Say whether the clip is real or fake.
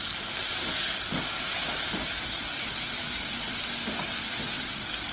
real